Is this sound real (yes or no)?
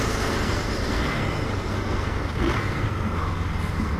no